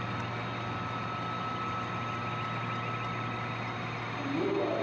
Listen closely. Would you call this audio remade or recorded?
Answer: recorded